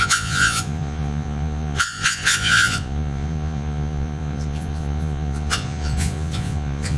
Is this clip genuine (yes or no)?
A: no